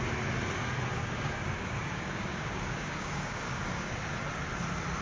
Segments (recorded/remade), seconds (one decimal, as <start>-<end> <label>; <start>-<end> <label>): 0.0-0.9 recorded; 0.9-3.9 remade; 3.9-5.0 recorded

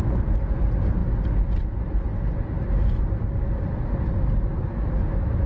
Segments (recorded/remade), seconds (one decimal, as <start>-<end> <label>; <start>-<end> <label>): 0.0-5.5 recorded